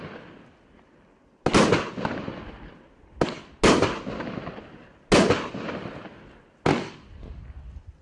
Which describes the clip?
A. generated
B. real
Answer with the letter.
B